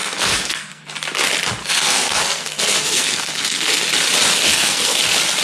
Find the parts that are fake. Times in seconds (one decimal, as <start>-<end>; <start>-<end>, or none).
0.0-0.9; 1.6-3.8; 4.5-5.0